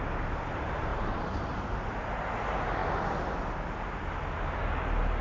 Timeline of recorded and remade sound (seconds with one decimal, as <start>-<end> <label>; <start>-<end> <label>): 0.0-0.9 recorded; 0.9-1.9 remade; 1.9-5.2 recorded